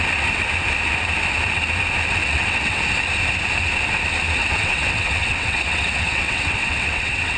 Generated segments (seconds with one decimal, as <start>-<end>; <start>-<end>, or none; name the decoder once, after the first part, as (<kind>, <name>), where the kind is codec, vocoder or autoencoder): 2.2-2.8 (vocoder, WaveNeXt); 4.4-7.4